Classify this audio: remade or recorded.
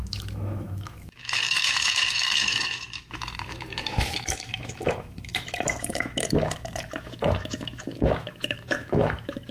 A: remade